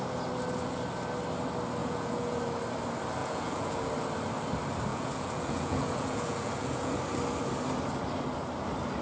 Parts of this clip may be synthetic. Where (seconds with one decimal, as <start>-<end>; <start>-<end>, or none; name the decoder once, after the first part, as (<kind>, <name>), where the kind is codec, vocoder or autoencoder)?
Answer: 1.8-2.4 (vocoder, Vocos); 3.2-3.9; 4.9-7.0